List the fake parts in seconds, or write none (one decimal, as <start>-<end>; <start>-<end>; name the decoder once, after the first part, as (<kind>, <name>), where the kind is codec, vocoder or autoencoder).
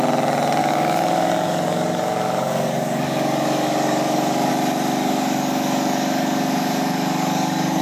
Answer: 0.6-4.5 (codec, DAC); 5.0-7.8